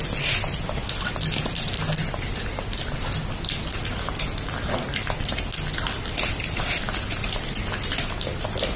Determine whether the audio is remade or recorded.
recorded